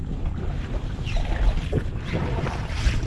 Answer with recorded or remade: recorded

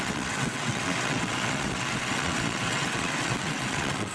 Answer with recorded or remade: remade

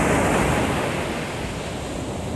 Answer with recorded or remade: recorded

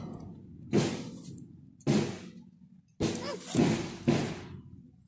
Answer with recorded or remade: recorded